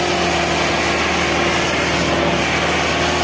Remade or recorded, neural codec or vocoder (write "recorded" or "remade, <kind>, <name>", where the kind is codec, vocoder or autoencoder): recorded